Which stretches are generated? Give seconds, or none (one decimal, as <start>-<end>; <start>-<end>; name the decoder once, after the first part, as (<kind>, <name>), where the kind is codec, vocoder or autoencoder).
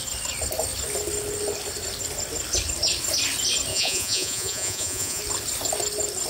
3.7-5.2 (vocoder, Vocos)